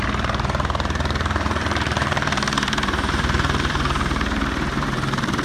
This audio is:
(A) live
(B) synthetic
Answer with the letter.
B